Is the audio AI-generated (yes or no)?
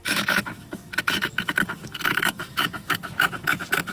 yes